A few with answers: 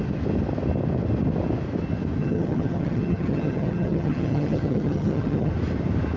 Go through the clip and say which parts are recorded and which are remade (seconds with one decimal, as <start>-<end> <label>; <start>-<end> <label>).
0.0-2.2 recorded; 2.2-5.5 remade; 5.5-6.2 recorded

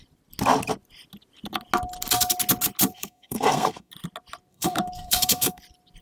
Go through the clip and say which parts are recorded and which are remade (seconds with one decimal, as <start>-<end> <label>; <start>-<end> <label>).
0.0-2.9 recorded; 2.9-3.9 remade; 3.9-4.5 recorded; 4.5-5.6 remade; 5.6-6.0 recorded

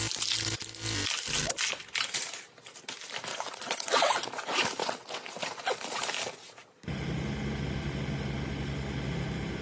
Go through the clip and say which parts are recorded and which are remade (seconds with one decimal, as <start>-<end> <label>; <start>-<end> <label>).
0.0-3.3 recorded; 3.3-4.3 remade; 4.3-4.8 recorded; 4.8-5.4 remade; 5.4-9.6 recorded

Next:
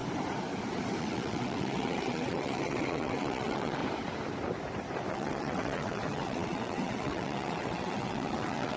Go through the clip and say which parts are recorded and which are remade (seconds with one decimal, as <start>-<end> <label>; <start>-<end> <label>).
0.0-1.0 recorded; 1.0-3.8 remade; 3.8-5.1 recorded; 5.1-8.8 remade

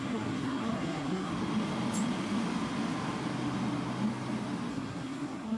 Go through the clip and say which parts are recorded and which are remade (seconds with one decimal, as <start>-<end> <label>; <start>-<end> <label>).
0.0-1.3 remade; 1.3-4.7 recorded; 4.7-5.6 remade

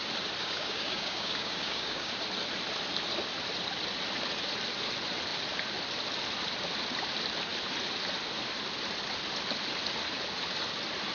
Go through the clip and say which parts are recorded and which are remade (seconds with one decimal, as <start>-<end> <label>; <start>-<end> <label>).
0.0-0.4 recorded; 0.4-2.1 remade; 2.1-11.1 recorded